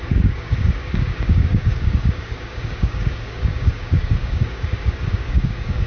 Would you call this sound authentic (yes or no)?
no